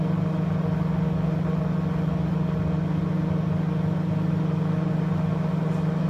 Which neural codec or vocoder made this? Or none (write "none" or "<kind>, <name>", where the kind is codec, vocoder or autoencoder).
none